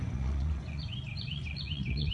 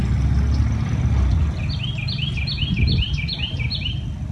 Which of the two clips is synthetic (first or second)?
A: first